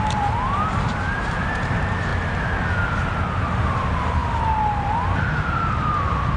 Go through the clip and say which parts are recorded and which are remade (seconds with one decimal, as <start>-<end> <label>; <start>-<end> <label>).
0.0-2.1 remade; 2.1-3.4 recorded; 3.4-4.2 remade; 4.2-5.7 recorded; 5.7-6.4 remade